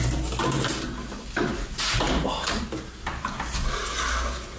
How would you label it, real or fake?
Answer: real